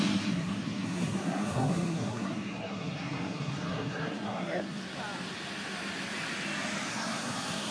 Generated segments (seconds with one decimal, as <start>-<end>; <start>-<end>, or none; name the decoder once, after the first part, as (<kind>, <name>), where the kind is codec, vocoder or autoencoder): 0.0-4.8 (codec, SNAC); 6.9-7.7